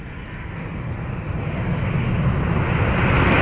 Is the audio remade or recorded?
recorded